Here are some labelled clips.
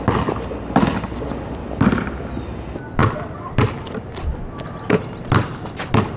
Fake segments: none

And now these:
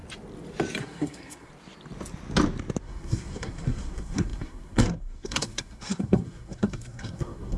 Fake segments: 0.8-1.5 (codec, SNAC); 2.8-7.6